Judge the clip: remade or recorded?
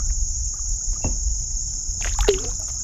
recorded